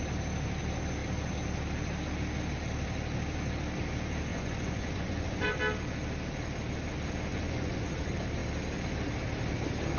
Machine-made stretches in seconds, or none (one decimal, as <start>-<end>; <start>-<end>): 4.3-5.6; 7.3-7.9